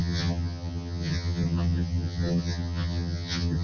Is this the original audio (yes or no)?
no